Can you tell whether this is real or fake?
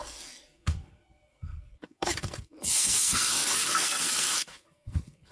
fake